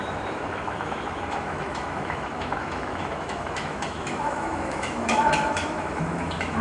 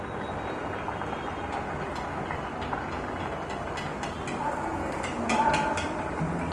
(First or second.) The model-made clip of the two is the first